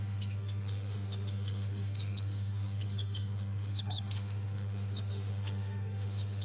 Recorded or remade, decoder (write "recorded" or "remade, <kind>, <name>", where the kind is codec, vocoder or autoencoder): remade, autoencoder, DAC-VAE